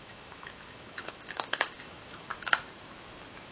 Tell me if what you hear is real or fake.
fake